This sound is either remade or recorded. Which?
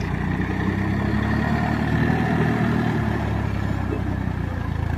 recorded